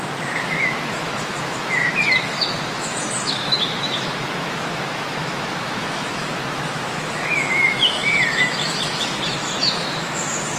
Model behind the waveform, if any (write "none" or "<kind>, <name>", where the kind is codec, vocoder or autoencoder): autoencoder, DAC-VAE